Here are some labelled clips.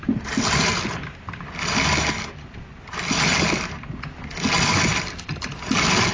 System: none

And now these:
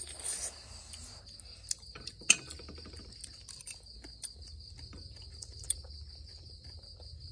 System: none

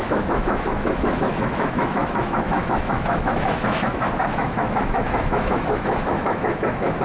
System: autoencoder, DAC-VAE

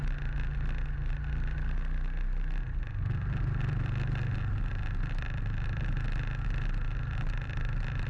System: none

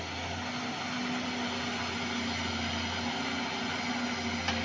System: none